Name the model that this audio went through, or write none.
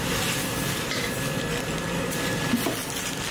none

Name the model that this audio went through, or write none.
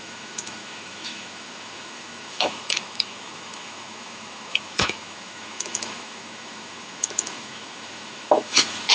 autoencoder, DAC-VAE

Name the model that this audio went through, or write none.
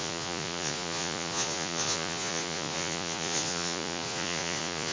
vocoder, Vocos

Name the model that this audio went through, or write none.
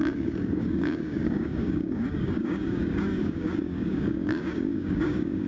codec, DAC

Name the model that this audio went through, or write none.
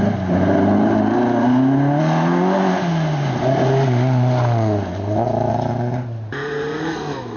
none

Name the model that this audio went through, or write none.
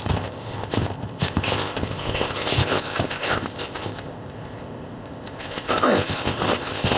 codec, ZipCodec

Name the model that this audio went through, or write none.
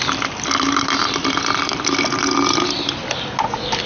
none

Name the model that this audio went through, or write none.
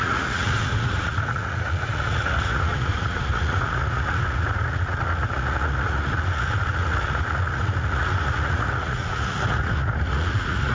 vocoder, Vocos